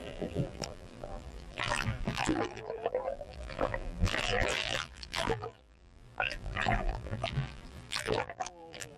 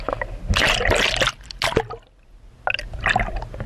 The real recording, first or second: second